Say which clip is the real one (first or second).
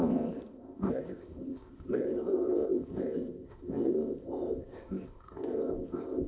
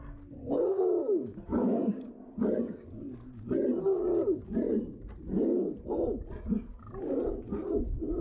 second